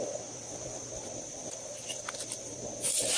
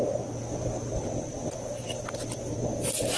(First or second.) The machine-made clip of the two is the first